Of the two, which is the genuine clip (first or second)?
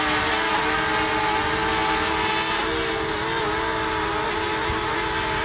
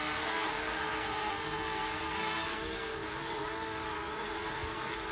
first